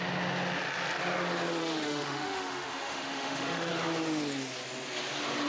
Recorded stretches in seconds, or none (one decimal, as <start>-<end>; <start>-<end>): 0.0-1.6; 3.7-5.5